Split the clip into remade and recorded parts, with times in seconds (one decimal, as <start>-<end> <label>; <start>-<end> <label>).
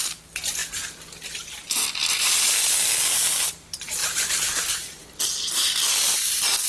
0.0-6.7 recorded